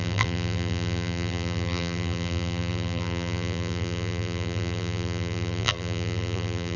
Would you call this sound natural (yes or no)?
no